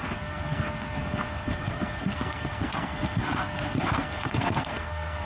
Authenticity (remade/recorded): remade